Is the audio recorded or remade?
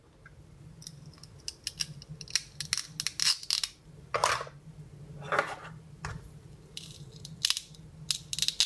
recorded